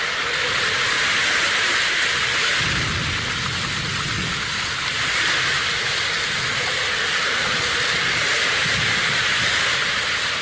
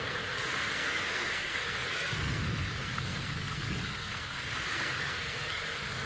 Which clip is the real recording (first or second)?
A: first